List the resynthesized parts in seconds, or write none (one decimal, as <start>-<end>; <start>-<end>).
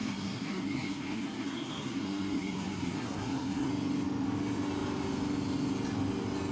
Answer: 0.0-3.7